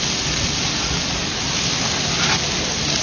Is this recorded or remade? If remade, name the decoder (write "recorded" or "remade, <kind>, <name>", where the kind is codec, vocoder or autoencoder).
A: recorded